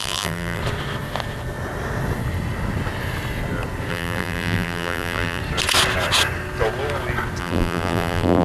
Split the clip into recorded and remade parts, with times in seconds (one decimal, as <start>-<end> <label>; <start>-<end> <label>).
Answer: 0.0-0.6 remade; 0.6-3.9 recorded; 3.9-5.4 remade; 5.4-7.4 recorded; 7.4-8.4 remade